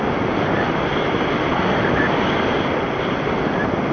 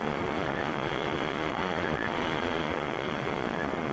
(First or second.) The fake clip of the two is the second